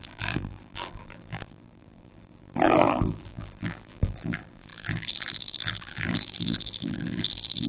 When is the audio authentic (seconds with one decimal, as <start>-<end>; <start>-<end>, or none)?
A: none